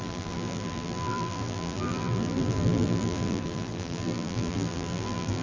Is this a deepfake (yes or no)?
yes